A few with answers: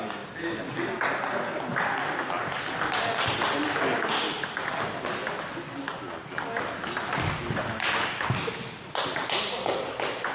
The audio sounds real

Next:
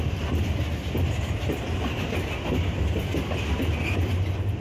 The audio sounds real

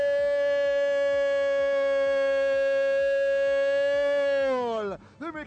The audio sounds real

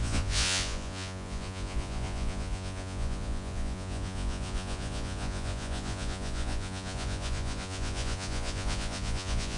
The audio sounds fake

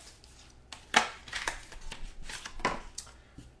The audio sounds real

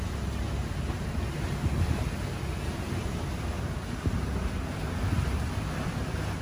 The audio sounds real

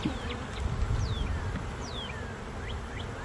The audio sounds fake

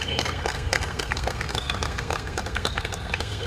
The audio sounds fake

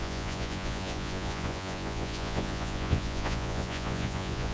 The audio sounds fake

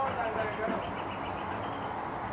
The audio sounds real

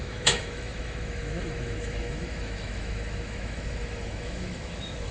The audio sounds fake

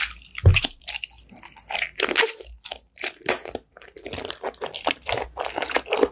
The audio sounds real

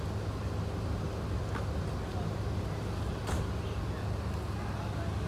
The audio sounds real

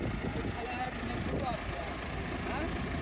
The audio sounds real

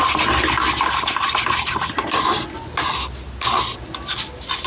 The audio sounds real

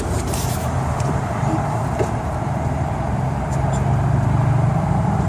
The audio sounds fake